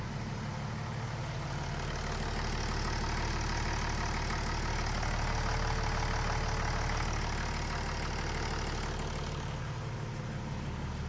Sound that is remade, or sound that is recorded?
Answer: recorded